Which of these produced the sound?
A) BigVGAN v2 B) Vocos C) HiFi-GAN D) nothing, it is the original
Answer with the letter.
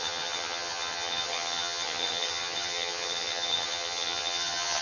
C